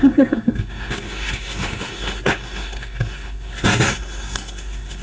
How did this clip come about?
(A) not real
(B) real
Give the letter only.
A